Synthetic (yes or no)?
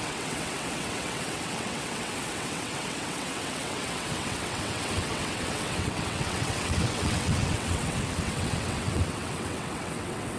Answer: yes